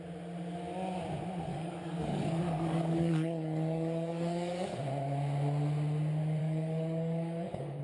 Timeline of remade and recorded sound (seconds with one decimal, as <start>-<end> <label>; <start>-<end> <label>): 0.0-1.5 recorded; 1.5-4.8 remade; 4.8-6.4 recorded; 6.4-7.8 remade